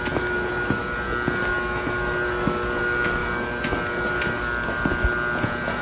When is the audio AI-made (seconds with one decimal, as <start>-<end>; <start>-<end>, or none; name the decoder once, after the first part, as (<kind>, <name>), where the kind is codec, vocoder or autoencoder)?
none